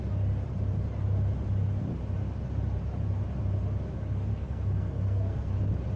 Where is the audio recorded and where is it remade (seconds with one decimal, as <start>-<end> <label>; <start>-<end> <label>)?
0.0-4.3 recorded; 4.3-5.5 remade; 5.5-6.0 recorded

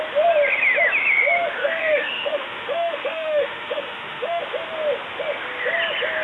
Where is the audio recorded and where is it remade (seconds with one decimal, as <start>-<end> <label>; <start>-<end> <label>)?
0.0-1.6 recorded; 1.6-4.4 remade; 4.4-6.2 recorded

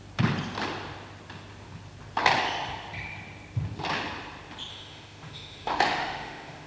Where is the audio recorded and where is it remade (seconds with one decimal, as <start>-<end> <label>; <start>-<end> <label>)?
0.0-4.7 recorded; 4.7-6.7 remade

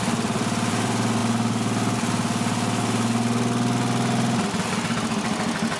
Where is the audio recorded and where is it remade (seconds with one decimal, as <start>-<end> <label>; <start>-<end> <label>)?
0.0-1.2 remade; 1.2-4.7 recorded; 4.7-5.8 remade

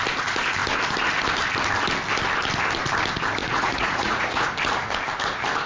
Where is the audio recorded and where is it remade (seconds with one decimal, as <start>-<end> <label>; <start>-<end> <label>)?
0.0-3.4 recorded; 3.4-4.5 remade; 4.5-5.7 recorded

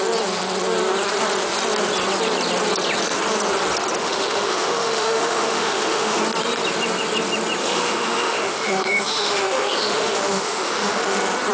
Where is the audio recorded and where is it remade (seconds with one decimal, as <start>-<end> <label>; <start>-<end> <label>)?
0.0-4.0 recorded; 4.0-6.2 remade; 6.2-7.6 recorded; 7.6-11.0 remade; 11.0-11.5 recorded